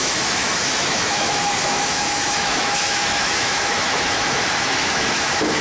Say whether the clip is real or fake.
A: fake